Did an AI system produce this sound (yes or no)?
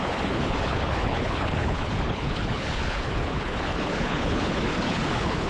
yes